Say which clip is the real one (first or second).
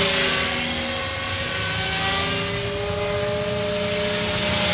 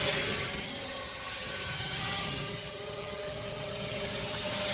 first